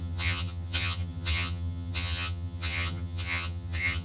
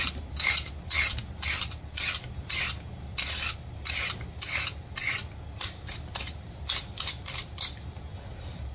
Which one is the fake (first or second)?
first